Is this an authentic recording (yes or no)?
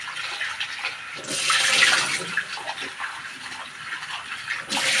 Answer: no